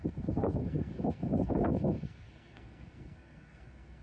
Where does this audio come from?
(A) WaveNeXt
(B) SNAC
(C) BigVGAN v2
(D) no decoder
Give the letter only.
B